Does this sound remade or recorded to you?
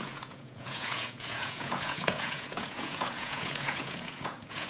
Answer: remade